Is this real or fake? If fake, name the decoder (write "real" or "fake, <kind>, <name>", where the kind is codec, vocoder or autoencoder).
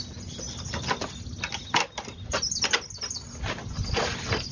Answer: real